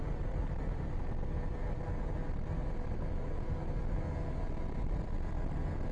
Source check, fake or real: real